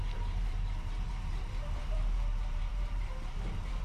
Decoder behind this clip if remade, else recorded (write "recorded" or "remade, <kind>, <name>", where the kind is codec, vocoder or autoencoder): remade, vocoder, BigVGAN v2